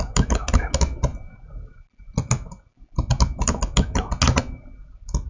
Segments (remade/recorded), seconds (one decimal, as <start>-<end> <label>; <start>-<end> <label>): 0.0-5.3 recorded